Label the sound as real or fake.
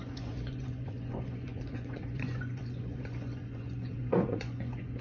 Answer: fake